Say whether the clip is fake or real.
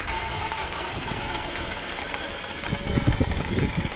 fake